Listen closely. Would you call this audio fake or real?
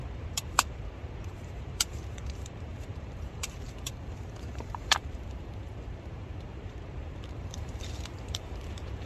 fake